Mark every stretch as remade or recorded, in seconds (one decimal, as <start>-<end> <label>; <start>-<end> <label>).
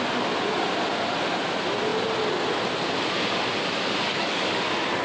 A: 0.0-4.1 recorded; 4.1-4.6 remade; 4.6-5.0 recorded